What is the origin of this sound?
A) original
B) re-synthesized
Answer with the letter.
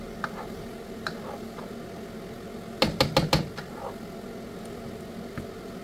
A